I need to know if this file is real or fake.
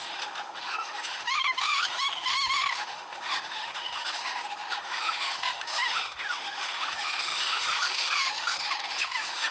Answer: fake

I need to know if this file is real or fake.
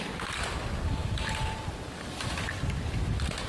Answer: real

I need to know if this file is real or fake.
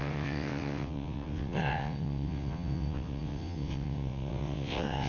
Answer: fake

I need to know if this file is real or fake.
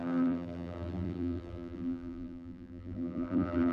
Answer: fake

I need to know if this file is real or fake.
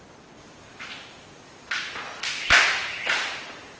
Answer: real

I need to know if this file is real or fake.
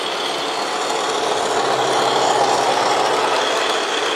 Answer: real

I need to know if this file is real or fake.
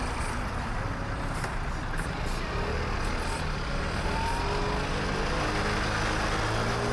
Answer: real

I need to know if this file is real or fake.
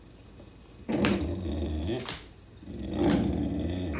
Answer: real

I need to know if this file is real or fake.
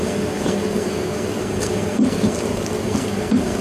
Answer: fake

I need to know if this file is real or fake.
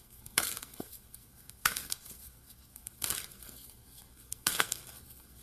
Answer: fake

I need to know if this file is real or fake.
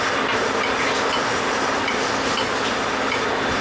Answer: real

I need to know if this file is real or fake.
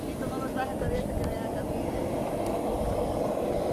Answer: real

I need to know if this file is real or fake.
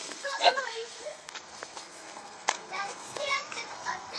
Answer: fake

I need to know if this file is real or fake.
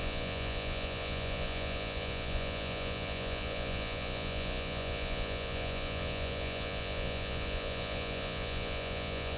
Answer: fake